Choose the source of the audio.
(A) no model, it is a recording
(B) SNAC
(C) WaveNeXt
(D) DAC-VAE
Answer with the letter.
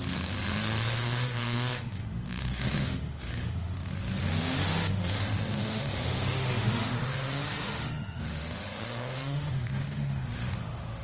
D